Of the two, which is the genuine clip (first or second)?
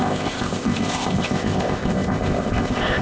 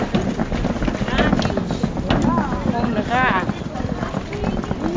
second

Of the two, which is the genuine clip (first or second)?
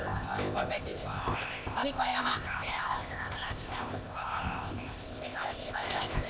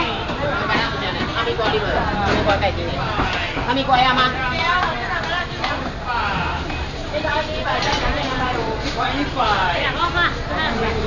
second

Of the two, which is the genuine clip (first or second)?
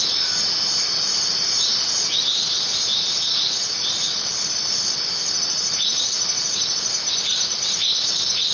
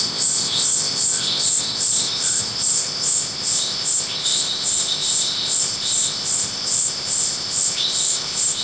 first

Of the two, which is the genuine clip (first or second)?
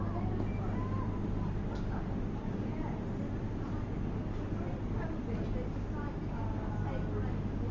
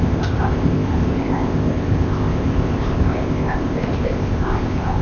first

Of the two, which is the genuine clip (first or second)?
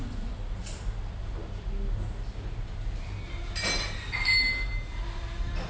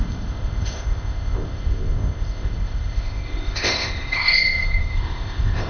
first